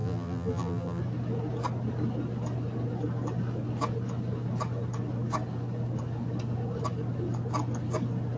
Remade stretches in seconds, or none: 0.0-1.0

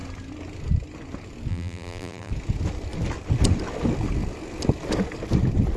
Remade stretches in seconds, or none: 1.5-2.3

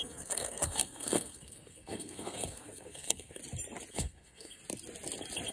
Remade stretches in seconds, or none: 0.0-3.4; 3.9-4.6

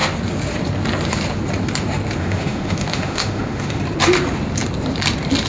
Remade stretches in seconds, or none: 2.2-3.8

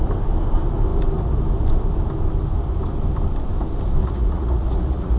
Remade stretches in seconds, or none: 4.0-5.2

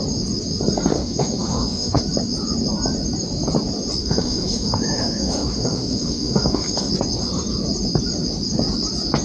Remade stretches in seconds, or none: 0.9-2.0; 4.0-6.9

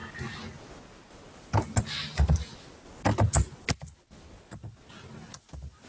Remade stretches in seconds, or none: none

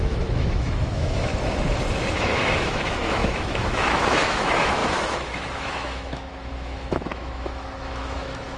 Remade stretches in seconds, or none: 0.0-1.3; 2.2-8.6